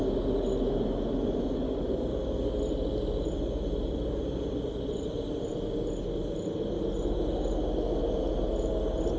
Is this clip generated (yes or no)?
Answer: no